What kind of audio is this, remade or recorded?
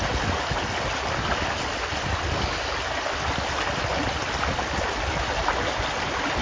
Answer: recorded